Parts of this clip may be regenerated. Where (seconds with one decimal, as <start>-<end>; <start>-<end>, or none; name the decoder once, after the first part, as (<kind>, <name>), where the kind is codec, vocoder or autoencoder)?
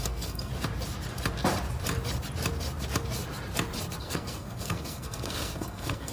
0.0-0.5 (codec, SNAC); 4.0-6.1